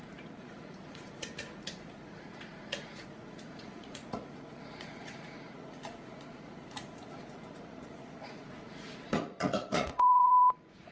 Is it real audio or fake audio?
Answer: fake